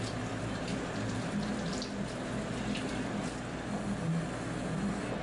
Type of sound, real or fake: real